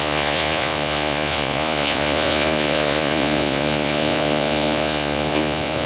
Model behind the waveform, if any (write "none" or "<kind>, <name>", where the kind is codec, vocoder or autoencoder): vocoder, Vocos